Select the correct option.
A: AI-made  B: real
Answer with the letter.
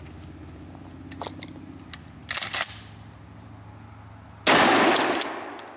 B